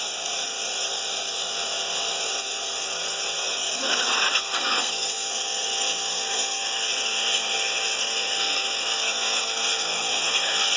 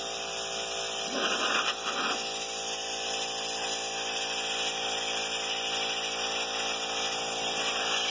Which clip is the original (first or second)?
second